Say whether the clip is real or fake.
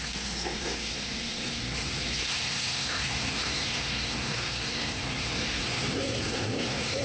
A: fake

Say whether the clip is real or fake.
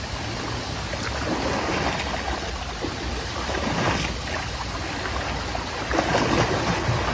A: real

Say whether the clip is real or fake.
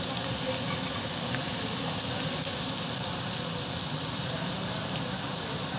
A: real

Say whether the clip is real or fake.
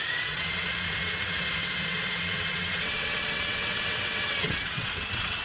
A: fake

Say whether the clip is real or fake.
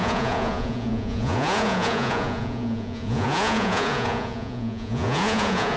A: fake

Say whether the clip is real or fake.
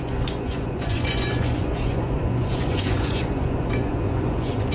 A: fake